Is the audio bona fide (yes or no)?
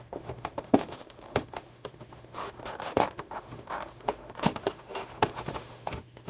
no